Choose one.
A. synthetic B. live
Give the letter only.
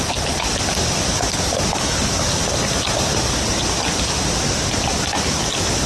B